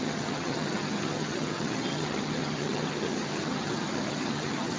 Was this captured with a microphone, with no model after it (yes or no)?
no